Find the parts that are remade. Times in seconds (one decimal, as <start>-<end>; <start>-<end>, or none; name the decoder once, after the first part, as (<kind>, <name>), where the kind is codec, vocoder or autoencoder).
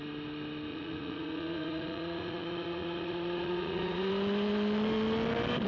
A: 0.7-4.1 (vocoder, Vocos)